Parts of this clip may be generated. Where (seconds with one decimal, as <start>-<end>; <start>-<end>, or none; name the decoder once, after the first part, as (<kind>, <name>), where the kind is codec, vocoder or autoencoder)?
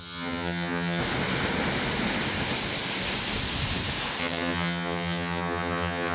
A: 0.0-1.0 (vocoder, HiFi-GAN); 4.2-6.1